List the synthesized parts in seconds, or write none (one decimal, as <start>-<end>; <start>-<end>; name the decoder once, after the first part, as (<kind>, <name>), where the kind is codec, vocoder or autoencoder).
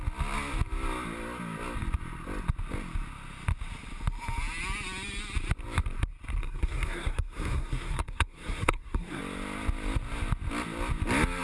6.4-9.2 (codec, SNAC)